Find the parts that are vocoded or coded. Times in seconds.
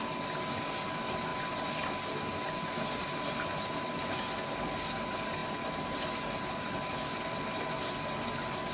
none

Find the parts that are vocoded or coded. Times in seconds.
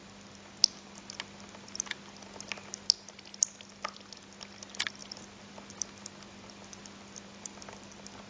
none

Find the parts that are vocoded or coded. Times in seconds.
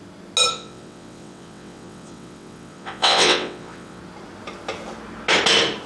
0.5-4.0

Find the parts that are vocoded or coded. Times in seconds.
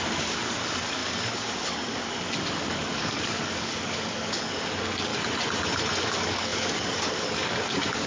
0.0-5.1; 6.0-8.1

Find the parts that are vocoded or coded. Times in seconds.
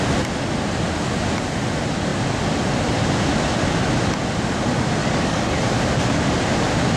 5.0-5.6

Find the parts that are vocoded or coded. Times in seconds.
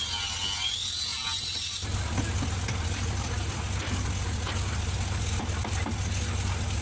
none